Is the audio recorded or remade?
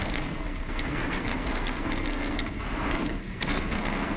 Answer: remade